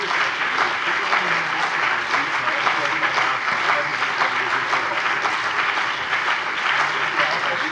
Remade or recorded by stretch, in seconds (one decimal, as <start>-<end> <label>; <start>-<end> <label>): 0.0-7.7 recorded